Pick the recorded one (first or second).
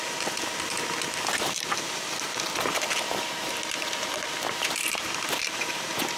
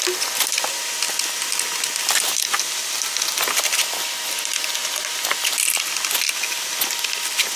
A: second